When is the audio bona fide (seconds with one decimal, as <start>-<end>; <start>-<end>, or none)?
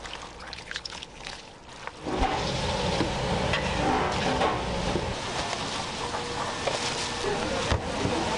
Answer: 0.0-0.4; 1.5-8.4